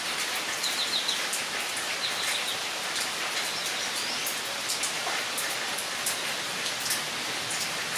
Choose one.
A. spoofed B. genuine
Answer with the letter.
B